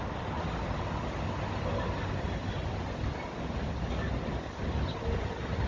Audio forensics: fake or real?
real